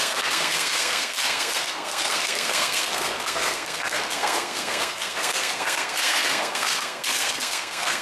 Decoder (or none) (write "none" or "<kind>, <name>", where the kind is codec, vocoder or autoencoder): codec, SNAC